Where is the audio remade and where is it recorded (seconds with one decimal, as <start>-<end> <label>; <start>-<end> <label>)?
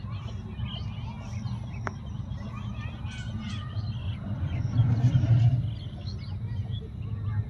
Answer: 0.0-4.0 recorded; 4.0-4.9 remade; 4.9-7.5 recorded